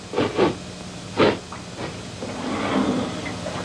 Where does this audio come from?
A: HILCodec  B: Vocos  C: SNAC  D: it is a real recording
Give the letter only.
D